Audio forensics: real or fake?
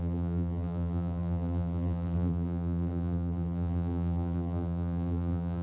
fake